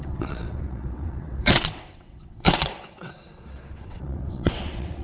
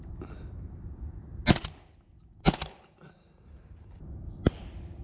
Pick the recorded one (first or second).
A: second